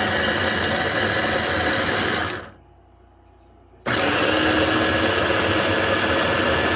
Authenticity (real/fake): real